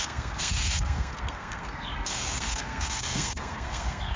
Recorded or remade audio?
remade